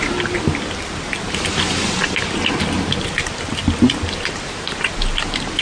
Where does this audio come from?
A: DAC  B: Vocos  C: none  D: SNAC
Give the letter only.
C